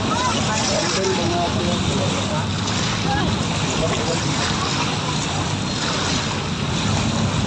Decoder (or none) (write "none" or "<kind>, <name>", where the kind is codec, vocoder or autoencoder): none